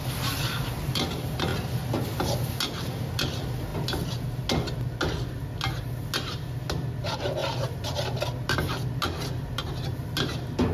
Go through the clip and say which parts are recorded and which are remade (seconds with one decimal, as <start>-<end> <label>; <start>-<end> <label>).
0.0-10.7 recorded